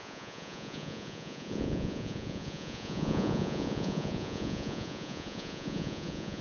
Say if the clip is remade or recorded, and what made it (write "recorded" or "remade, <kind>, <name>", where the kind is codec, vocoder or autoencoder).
remade, vocoder, Vocos